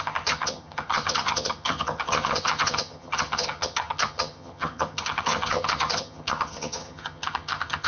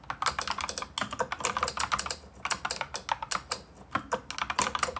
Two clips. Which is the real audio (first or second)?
second